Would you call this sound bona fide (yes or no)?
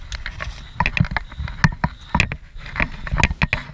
yes